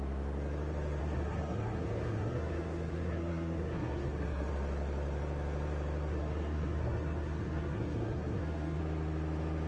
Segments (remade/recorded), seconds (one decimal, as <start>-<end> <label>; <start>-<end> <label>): 0.0-1.0 recorded; 1.0-4.5 remade; 4.5-6.1 recorded; 6.1-8.8 remade; 8.8-9.7 recorded